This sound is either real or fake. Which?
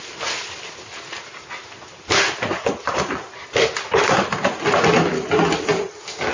real